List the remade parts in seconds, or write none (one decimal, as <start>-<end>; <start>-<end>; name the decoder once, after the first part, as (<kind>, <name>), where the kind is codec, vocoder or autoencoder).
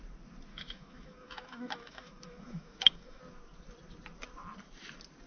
0.5-3.2 (autoencoder, DAC-VAE)